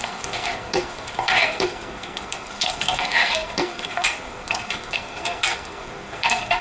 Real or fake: fake